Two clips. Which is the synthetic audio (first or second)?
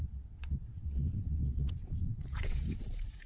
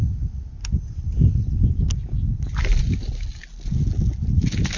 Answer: first